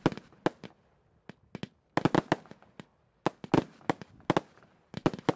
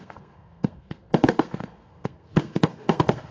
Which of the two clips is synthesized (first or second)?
second